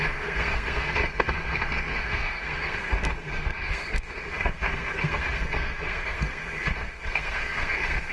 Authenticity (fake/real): fake